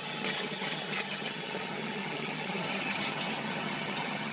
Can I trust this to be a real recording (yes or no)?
no